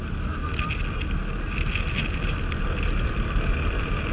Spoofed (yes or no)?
no